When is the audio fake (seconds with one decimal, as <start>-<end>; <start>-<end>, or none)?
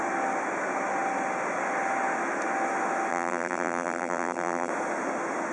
3.1-4.7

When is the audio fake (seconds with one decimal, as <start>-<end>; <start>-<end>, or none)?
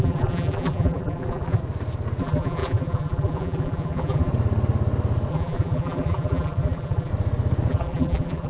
0.0-1.6; 2.2-4.3; 5.3-7.1; 7.7-8.5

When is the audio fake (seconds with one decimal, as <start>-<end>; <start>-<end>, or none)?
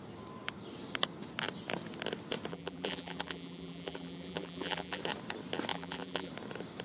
2.5-5.0; 5.7-6.3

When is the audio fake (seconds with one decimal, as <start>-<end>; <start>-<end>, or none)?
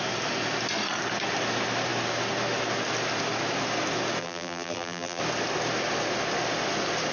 4.2-5.2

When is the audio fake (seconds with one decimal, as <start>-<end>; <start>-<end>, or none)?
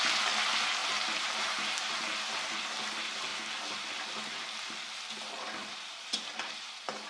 0.8-2.6; 5.6-7.1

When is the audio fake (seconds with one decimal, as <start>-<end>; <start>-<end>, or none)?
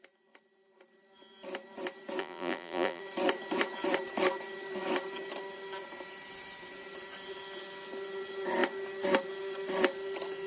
2.2-3.0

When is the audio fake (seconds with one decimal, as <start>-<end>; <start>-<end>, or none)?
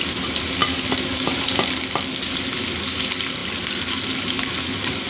0.6-1.9; 3.4-4.3